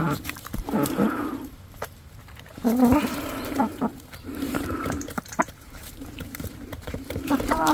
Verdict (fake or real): fake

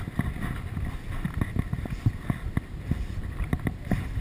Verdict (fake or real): fake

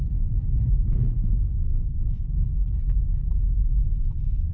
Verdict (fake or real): real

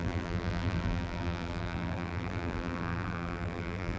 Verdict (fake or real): fake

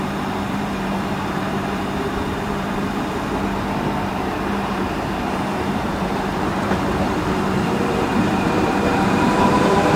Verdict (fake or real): fake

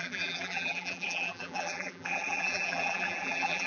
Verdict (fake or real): fake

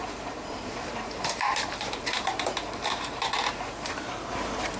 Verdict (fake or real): fake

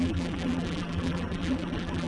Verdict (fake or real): fake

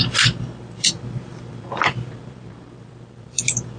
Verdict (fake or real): fake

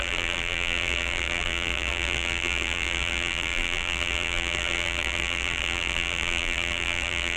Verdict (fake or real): fake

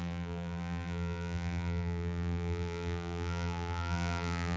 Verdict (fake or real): fake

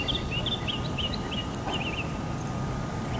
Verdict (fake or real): real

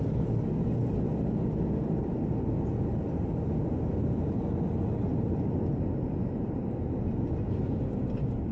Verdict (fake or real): real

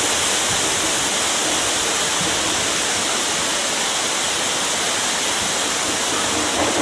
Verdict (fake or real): real